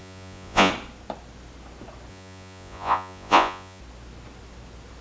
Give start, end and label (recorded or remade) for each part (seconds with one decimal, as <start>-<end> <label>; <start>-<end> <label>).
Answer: 0.0-0.7 remade; 0.7-2.1 recorded; 2.1-3.8 remade; 3.8-5.0 recorded